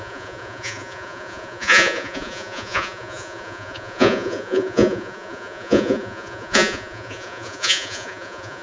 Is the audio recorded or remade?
remade